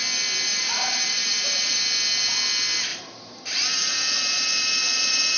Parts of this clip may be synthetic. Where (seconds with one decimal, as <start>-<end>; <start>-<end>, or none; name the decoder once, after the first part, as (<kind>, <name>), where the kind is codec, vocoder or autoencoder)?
0.5-1.8 (vocoder, BigVGAN v2); 2.9-5.4